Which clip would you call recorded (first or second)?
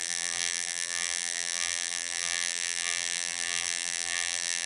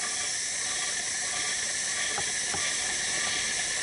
second